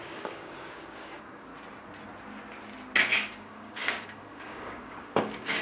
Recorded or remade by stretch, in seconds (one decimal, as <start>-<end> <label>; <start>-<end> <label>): 0.0-1.5 remade; 1.5-3.1 recorded; 3.1-5.6 remade